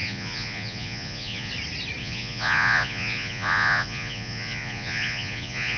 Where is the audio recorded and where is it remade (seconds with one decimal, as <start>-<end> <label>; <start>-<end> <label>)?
0.0-1.5 remade; 1.5-2.0 recorded; 2.0-5.8 remade